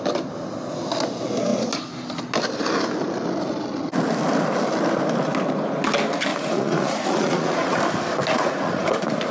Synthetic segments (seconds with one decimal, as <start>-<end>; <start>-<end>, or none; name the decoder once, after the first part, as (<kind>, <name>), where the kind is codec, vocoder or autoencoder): 6.3-7.8 (vocoder, Vocos); 8.3-8.9

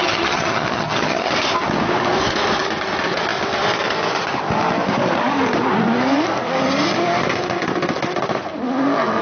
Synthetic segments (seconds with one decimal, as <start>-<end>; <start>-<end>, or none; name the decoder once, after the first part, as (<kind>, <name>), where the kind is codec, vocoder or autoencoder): 0.0-1.3 (vocoder, HiFi-GAN)

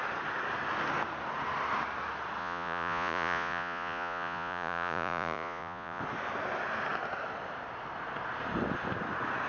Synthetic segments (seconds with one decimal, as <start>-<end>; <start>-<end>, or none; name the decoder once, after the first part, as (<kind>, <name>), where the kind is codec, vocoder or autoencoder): 2.4-6.0 (vocoder, Vocos)

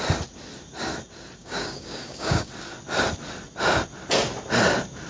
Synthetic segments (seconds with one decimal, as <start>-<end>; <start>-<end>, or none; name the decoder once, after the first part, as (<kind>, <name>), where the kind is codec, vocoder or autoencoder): 1.4-2.5 (codec, DAC)